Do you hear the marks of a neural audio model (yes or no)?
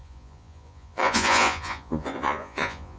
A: yes